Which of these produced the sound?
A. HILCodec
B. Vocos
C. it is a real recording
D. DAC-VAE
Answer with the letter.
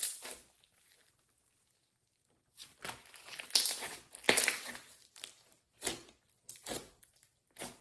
C